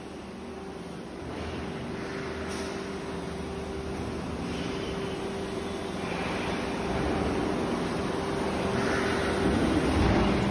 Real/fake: real